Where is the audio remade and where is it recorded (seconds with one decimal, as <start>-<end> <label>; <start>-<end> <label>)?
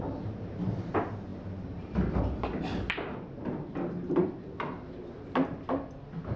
0.0-6.4 recorded